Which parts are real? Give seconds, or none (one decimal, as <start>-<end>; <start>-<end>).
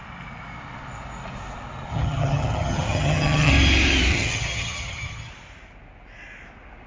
0.0-1.9; 3.5-4.1; 5.3-6.9